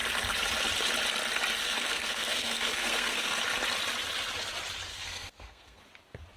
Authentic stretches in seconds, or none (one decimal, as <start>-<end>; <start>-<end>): 0.0-1.6; 3.4-4.9; 5.8-6.4